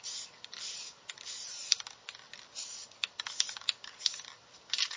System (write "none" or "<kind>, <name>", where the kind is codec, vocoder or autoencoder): none